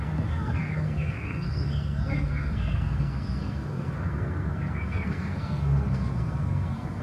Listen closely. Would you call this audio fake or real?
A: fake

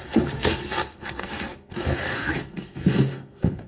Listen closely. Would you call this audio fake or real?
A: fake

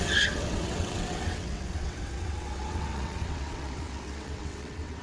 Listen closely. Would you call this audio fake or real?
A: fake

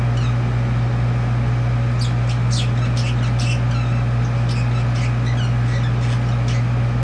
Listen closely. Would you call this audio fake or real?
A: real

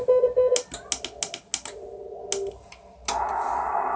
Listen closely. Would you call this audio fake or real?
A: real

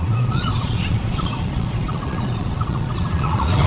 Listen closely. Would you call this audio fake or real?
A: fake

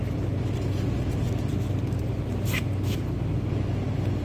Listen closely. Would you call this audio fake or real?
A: real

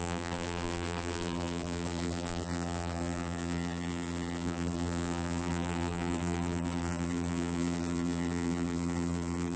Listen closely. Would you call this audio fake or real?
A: fake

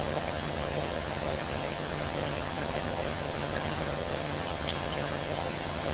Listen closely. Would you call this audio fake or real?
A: fake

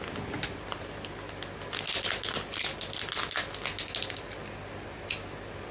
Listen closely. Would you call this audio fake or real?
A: real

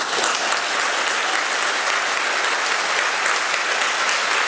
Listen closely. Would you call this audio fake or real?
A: real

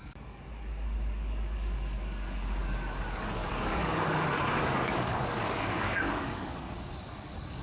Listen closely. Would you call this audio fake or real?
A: fake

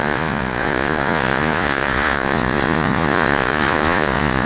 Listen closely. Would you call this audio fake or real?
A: fake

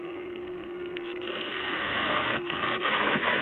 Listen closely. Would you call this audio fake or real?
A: fake